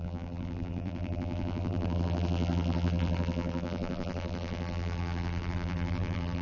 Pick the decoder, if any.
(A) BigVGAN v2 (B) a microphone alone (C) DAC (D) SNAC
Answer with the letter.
A